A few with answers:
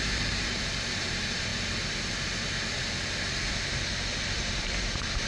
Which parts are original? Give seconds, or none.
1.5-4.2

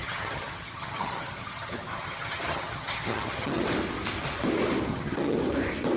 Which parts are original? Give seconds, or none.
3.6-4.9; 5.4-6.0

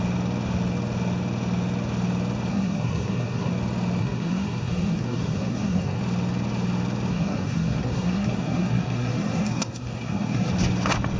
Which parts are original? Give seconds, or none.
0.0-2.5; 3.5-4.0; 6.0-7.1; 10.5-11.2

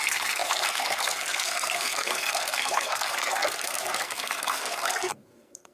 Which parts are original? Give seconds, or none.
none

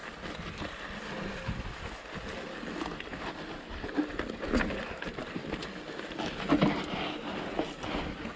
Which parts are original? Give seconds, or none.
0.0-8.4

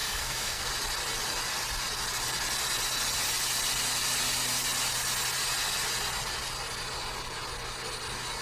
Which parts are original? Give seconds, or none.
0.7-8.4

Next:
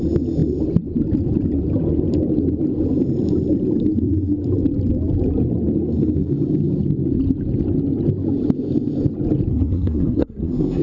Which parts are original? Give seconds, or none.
0.0-9.5

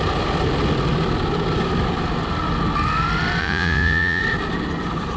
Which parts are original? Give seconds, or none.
0.0-3.4; 4.2-5.2